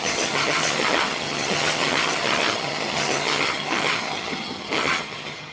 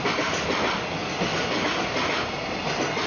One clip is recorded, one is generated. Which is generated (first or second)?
first